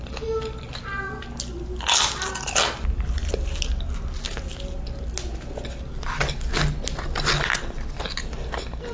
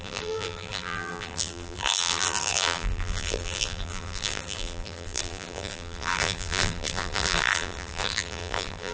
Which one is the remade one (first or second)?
second